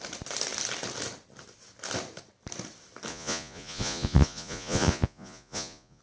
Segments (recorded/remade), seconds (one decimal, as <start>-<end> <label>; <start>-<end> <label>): 0.0-3.1 recorded; 3.1-6.0 remade

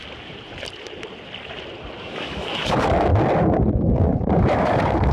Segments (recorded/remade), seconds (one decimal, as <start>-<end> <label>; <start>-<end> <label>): 0.0-2.0 recorded; 2.0-3.1 remade; 3.1-3.7 recorded; 3.7-5.1 remade